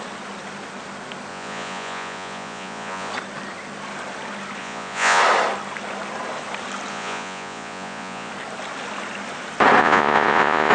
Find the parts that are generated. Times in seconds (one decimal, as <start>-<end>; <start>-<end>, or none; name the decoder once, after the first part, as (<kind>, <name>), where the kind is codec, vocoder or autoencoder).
1.3-3.1 (vocoder, Vocos); 4.6-5.2; 6.9-8.3; 9.8-10.7